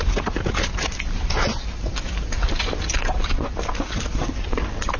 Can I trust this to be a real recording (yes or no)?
yes